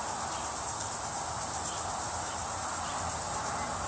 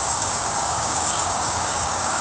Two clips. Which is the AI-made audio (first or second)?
second